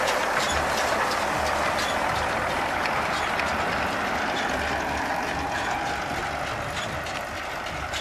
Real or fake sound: real